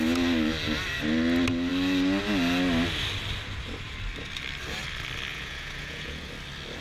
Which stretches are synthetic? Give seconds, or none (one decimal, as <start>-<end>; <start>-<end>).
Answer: 5.3-6.3

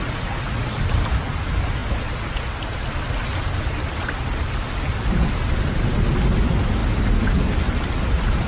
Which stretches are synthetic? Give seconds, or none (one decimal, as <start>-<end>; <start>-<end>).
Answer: none

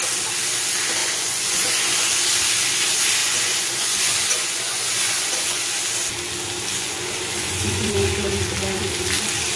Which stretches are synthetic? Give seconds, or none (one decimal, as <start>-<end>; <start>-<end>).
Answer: 1.0-2.1; 3.2-5.6; 6.7-7.9

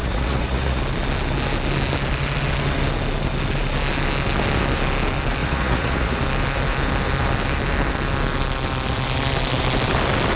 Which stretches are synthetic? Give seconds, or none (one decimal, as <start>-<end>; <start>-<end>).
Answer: 0.0-0.8; 5.4-6.2

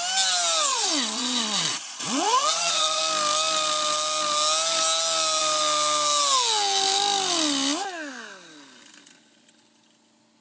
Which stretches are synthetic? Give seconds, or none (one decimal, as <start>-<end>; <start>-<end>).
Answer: 0.7-3.0